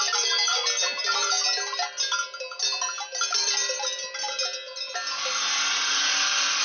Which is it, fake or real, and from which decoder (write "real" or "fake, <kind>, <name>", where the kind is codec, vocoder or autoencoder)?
real